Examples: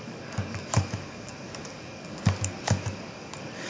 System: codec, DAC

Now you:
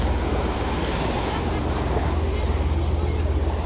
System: none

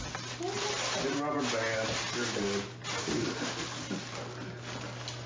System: none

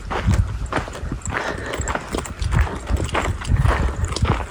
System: none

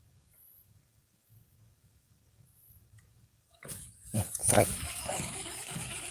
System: codec, DAC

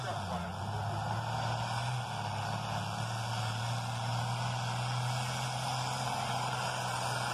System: none